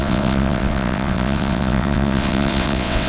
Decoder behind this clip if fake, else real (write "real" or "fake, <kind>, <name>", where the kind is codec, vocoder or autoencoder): fake, vocoder, WaveNeXt